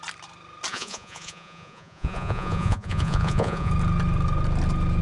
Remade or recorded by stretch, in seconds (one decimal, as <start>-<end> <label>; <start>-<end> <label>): 0.0-0.7 recorded; 0.7-3.7 remade; 3.7-5.0 recorded